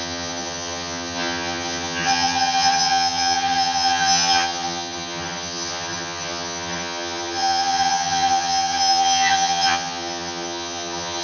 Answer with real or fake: fake